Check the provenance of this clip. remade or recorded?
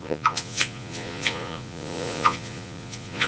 remade